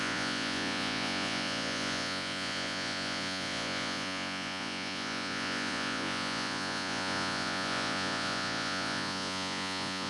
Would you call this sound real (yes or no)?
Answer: no